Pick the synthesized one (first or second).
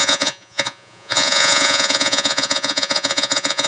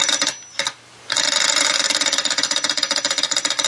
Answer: first